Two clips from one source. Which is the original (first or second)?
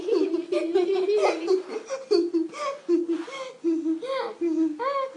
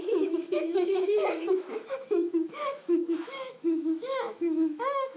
first